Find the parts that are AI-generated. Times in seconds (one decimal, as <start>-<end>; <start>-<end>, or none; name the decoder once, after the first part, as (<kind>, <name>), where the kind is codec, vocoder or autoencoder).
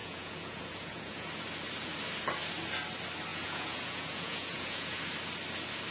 0.0-1.3 (vocoder, Vocos); 3.3-5.0